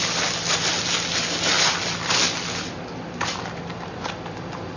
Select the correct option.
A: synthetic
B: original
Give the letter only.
B